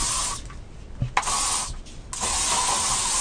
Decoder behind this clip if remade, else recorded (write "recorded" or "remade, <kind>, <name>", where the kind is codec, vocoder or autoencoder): recorded